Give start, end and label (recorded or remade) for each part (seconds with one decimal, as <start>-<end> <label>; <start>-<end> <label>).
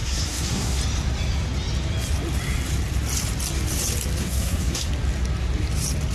0.0-0.8 remade; 0.8-4.2 recorded; 4.2-4.9 remade; 4.9-6.1 recorded